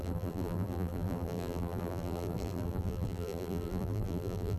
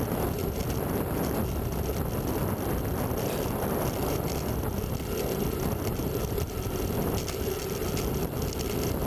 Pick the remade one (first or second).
first